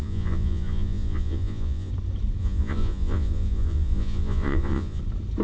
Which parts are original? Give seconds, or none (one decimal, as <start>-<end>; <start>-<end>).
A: 1.9-2.4; 5.0-5.4